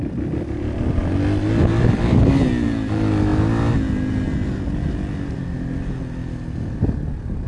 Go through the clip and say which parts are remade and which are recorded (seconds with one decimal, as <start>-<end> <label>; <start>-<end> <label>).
0.0-7.5 recorded